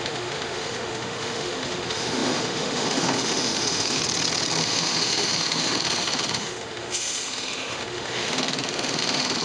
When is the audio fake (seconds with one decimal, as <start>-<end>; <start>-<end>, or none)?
0.0-4.0; 4.6-9.4